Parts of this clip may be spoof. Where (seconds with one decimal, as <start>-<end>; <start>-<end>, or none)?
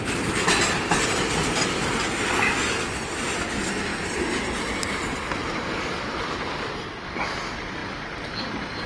6.1-7.1